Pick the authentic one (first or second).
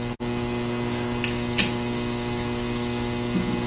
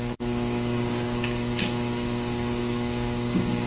first